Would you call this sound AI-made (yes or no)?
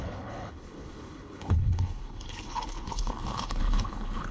yes